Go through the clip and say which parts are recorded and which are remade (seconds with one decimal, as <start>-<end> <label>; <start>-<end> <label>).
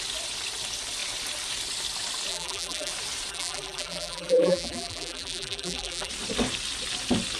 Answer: 0.0-2.3 recorded; 2.3-2.9 remade; 2.9-3.3 recorded; 3.3-6.1 remade; 6.1-7.4 recorded